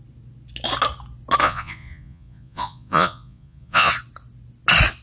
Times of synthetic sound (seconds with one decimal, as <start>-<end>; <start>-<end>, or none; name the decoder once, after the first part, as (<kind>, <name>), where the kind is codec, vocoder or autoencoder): 1.4-3.9 (vocoder, Vocos)

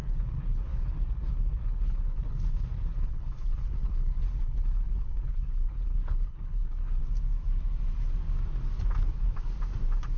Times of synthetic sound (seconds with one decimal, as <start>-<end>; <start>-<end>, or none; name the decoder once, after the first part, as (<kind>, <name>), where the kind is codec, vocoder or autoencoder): 0.0-7.0 (codec, HILCodec)

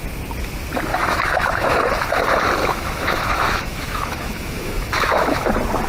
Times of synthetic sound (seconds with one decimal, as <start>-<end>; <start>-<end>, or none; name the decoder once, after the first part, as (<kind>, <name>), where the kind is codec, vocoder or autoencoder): 0.9-1.8 (autoencoder, DAC-VAE); 2.6-5.5

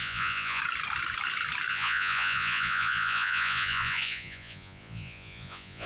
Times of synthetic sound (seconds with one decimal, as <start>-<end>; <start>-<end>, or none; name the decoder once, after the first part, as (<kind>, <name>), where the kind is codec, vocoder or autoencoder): 0.0-0.6 (vocoder, Vocos); 1.7-5.9

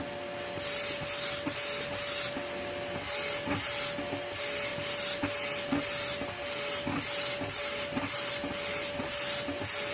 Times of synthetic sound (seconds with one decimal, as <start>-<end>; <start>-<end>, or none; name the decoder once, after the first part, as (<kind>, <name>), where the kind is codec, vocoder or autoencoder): none

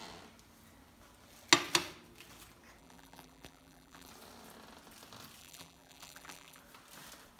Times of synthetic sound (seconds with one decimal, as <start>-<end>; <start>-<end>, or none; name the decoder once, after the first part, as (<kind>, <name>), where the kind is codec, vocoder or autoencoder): 2.8-4.1 (vocoder, BigVGAN v2); 5.4-6.6

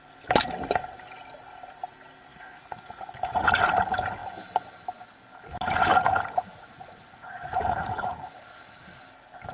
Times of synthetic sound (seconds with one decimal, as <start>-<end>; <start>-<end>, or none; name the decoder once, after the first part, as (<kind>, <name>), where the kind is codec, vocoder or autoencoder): 2.3-3.6 (vocoder, Vocos); 5.9-9.0

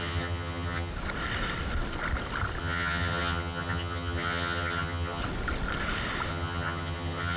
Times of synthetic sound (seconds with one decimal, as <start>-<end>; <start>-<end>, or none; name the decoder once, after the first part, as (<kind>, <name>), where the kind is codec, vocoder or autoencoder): 0.0-0.9 (vocoder, HiFi-GAN); 2.6-5.2; 6.3-7.4